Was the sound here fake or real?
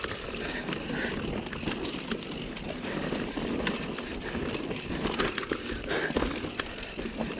real